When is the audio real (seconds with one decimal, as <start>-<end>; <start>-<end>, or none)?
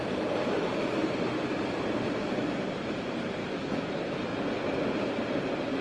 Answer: 4.3-5.0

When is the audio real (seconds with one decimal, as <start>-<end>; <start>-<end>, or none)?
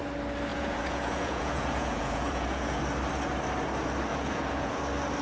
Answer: 0.0-0.5; 2.8-4.1; 4.8-5.2